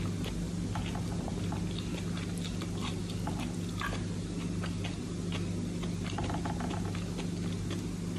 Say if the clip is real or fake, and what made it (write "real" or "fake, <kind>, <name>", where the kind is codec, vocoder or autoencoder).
real